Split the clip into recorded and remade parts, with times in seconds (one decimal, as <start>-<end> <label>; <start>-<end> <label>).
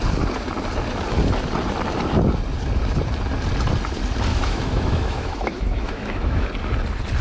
0.0-4.3 recorded; 4.3-6.5 remade; 6.5-7.2 recorded